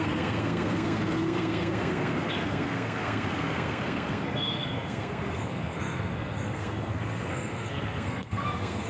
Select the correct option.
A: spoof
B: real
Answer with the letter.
A